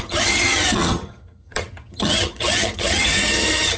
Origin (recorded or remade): remade